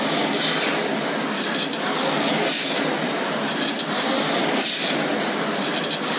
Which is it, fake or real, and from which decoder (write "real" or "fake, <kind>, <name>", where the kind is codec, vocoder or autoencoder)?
real